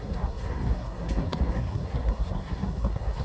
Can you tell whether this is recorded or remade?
remade